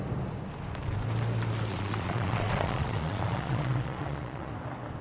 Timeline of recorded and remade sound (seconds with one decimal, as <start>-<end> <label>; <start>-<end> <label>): 0.0-1.7 recorded; 1.7-4.5 remade; 4.5-5.0 recorded